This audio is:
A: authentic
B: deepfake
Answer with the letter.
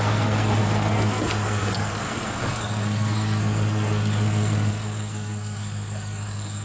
B